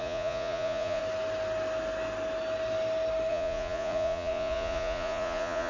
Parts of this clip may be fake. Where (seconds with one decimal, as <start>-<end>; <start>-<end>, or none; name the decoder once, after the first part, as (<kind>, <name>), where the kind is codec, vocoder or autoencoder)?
0.0-1.0 (vocoder, Vocos); 3.3-5.7